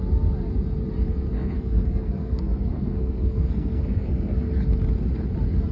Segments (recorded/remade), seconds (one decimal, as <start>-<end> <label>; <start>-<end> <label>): 0.0-1.1 recorded; 1.1-4.5 remade; 4.5-5.7 recorded